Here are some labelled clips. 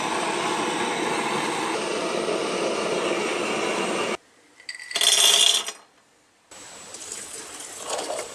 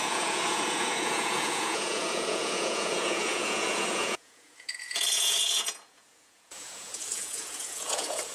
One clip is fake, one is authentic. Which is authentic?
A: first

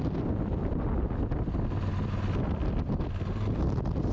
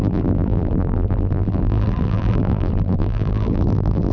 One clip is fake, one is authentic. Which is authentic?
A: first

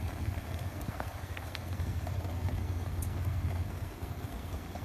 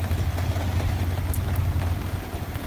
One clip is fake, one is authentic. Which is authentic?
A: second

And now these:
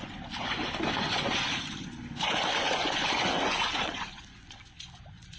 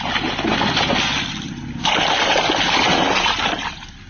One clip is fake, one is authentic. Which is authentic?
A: second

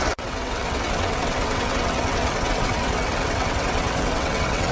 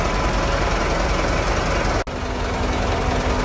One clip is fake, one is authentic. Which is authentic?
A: second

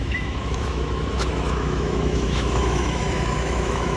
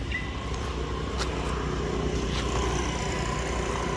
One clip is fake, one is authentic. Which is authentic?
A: second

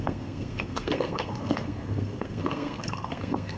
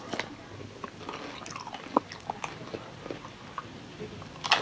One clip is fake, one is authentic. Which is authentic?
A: second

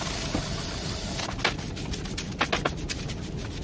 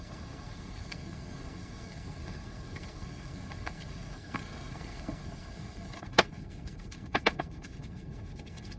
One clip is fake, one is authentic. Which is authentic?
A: first